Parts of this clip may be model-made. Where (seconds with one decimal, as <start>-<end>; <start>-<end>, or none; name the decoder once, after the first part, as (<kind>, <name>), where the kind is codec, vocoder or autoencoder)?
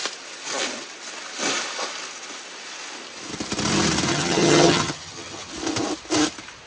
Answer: 4.1-5.5 (vocoder, HiFi-GAN)